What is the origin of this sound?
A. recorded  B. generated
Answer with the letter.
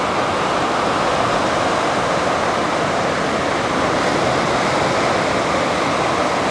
A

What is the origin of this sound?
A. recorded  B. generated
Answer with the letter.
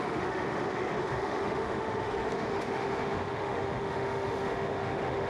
B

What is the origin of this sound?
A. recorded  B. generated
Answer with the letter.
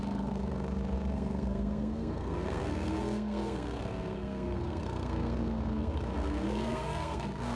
B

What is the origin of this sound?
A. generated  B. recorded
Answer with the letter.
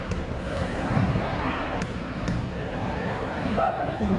A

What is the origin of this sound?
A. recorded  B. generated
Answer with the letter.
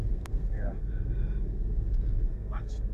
B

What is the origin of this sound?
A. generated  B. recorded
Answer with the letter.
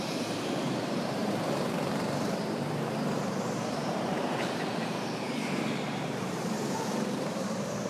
A